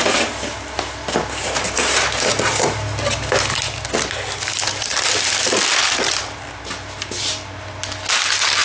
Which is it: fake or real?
real